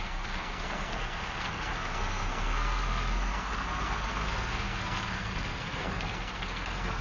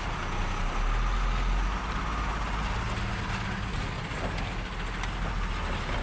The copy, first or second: first